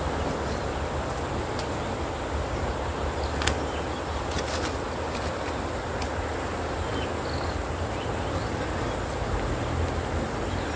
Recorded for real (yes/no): yes